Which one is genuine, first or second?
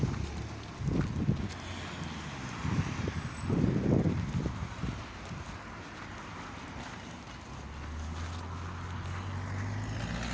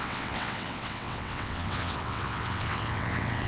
first